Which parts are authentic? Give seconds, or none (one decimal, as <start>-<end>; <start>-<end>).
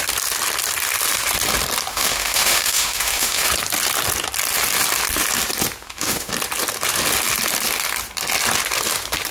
0.0-1.9; 3.5-5.8; 6.3-9.3